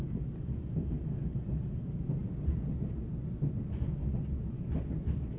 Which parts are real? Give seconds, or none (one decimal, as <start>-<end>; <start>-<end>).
0.0-5.4